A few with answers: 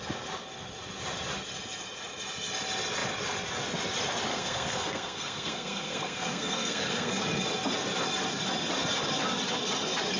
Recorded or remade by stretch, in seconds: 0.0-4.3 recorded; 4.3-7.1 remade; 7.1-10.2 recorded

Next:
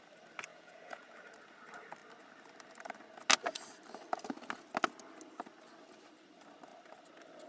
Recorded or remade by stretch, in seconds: 0.0-0.5 recorded; 0.5-1.1 remade; 1.1-7.5 recorded

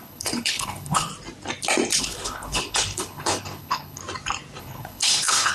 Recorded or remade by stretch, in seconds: 0.0-1.1 remade; 1.1-2.0 recorded; 2.0-4.0 remade; 4.0-4.6 recorded; 4.6-5.5 remade

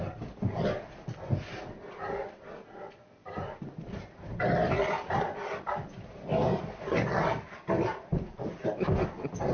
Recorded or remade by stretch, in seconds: 0.0-9.5 recorded

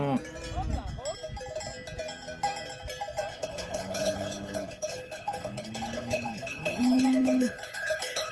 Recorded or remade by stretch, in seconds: 0.0-3.3 recorded; 3.3-8.3 remade

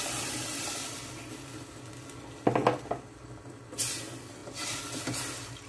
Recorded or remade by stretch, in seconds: 0.0-5.7 recorded